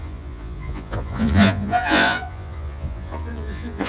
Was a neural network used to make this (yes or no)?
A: yes